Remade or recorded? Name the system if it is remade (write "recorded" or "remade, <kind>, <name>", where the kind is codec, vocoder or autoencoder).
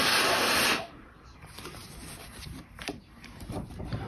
remade, vocoder, BigVGAN v2